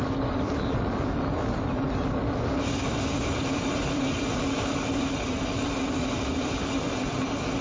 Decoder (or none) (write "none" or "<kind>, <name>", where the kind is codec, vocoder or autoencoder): none